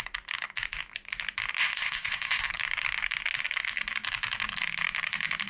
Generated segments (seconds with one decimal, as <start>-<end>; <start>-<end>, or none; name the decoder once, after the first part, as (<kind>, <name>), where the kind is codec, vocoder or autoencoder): 1.6-2.5 (codec, ZipCodec)